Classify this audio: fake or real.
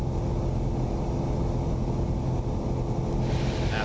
real